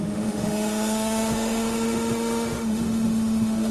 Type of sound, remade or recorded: remade